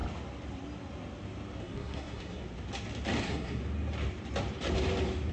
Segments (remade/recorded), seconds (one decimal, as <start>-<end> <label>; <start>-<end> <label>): 0.0-1.6 recorded; 1.6-2.4 remade; 2.4-3.2 recorded; 3.2-3.6 remade; 3.6-5.3 recorded